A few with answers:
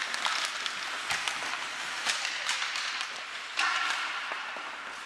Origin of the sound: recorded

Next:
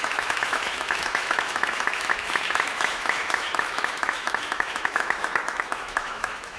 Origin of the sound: remade